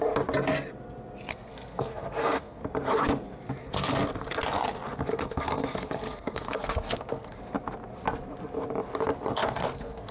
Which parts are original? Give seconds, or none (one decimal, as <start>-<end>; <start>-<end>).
0.0-1.3; 2.6-3.6; 4.1-5.1; 7.4-9.3